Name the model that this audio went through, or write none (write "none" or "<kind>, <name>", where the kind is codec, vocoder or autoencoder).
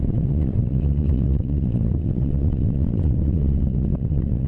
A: vocoder, WaveNeXt